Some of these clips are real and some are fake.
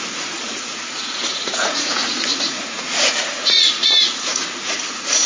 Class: fake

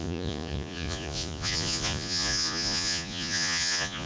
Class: fake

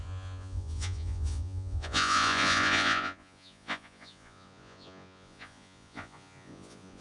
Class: fake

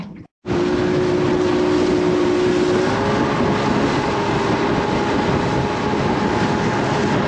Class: real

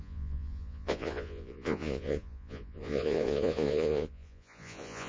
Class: fake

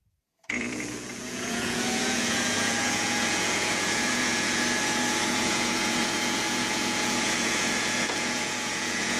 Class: fake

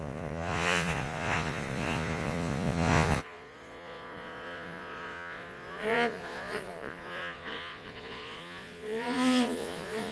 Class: fake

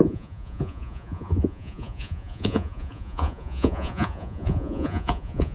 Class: fake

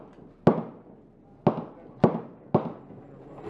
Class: real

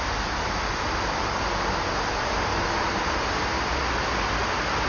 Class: real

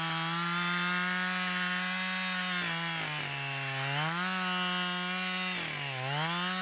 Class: real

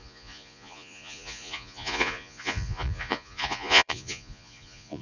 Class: fake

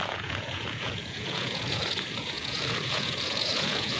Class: fake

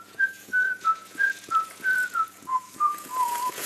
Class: fake